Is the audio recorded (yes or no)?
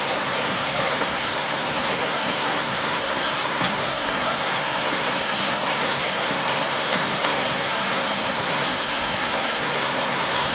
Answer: no